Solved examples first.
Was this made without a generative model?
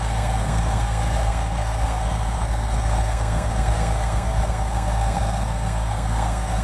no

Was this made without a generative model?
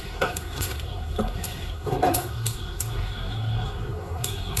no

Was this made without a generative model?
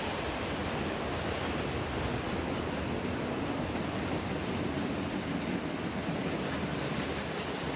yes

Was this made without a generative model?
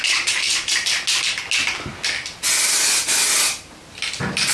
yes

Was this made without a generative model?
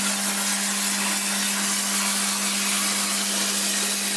yes